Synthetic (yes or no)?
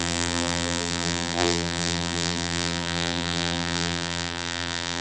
yes